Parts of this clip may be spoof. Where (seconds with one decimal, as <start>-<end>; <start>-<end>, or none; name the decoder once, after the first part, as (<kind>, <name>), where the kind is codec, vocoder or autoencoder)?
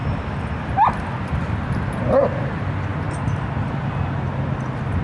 2.0-2.9 (vocoder, BigVGAN v2); 4.6-5.0